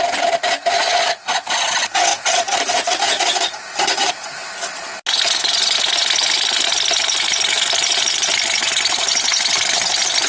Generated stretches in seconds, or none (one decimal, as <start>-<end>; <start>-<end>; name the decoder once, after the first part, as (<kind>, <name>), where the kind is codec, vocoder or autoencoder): 2.1-4.1 (vocoder, BigVGAN v2)